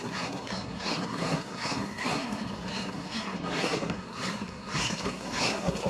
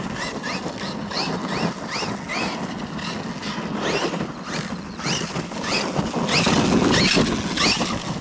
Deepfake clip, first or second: first